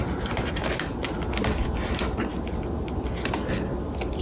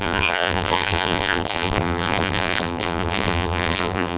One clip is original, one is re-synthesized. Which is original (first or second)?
first